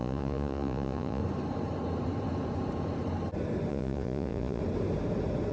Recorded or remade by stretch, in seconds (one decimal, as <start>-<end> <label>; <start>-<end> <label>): 0.0-1.2 remade; 1.2-3.7 recorded; 3.7-4.6 remade; 4.6-5.5 recorded